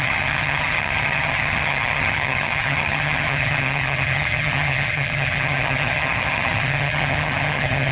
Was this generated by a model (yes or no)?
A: yes